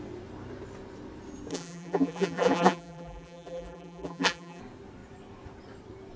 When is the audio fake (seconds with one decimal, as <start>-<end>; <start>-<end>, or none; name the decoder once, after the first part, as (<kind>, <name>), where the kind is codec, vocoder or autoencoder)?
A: 1.5-4.6 (vocoder, BigVGAN v2)

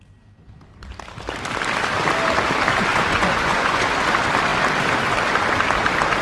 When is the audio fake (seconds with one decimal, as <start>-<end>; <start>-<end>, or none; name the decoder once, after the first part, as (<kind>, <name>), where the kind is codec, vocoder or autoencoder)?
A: 2.9-3.8 (vocoder, Vocos)

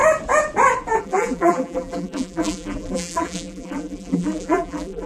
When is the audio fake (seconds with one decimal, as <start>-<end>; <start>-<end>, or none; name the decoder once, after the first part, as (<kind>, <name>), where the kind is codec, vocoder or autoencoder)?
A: 1.0-5.1 (vocoder, BigVGAN v2)

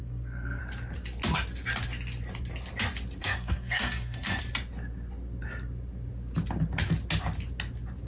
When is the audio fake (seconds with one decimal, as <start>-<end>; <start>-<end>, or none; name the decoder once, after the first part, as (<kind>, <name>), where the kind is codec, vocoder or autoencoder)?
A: 0.0-0.6 (codec, SNAC); 3.2-4.4

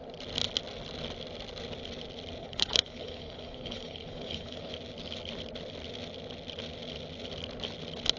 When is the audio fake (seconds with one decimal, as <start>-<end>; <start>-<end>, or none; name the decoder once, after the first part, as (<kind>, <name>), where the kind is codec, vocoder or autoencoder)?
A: 2.4-4.7 (codec, HILCodec)

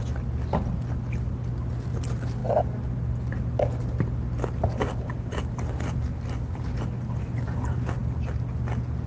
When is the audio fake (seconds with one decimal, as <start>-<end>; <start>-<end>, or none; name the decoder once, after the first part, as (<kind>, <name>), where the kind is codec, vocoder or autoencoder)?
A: none

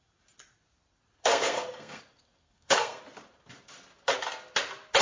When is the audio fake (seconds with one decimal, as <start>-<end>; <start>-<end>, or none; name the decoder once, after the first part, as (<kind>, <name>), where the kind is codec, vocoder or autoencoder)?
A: 1.2-2.0 (codec, SNAC); 2.4-3.0

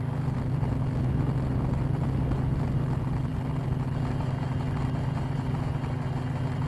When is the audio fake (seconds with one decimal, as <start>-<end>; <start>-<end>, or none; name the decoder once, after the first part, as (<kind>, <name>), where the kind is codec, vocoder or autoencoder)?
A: none